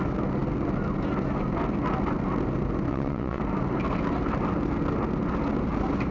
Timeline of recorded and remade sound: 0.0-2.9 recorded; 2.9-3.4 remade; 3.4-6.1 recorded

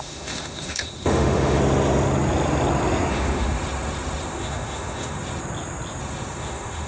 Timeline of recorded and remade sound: 0.0-1.6 remade; 1.6-3.1 recorded; 3.1-5.4 remade; 5.4-6.0 recorded; 6.0-6.9 remade

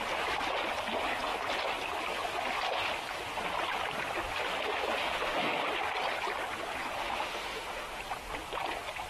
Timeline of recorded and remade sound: 0.0-5.0 recorded; 5.0-5.7 remade; 5.7-7.0 recorded; 7.0-8.0 remade; 8.0-9.1 recorded

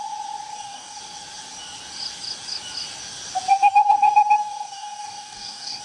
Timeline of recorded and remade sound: 0.0-0.5 recorded; 0.5-1.0 remade; 1.0-3.5 recorded; 3.5-5.8 remade

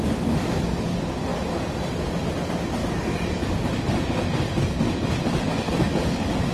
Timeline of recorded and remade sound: 0.0-2.8 recorded; 2.8-3.3 remade; 3.3-5.5 recorded; 5.5-6.5 remade

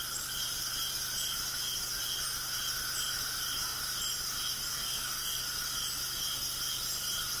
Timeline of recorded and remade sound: 0.0-4.7 recorded; 4.7-5.4 remade; 5.4-7.4 recorded

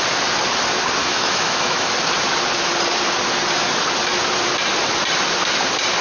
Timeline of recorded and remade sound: 0.0-1.0 recorded; 1.0-1.9 remade; 1.9-6.0 recorded

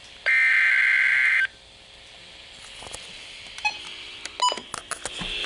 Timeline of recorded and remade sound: 0.0-0.5 remade; 0.5-1.1 recorded; 1.1-2.6 remade; 2.6-5.5 recorded